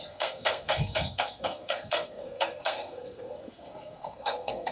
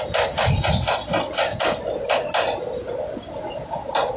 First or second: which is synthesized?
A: first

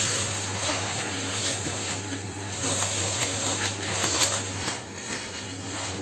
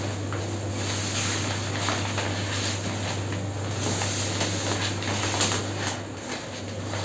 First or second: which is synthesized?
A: first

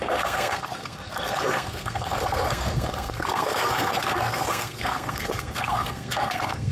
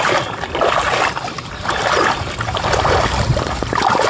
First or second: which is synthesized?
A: first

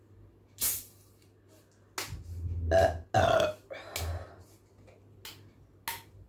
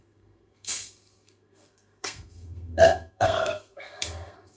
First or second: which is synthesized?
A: second